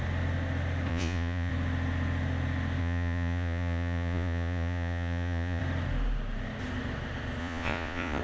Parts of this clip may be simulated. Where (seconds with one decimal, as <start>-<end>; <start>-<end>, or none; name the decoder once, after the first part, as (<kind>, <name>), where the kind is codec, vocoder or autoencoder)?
0.9-1.5 (vocoder, Vocos); 2.8-5.6; 7.4-8.2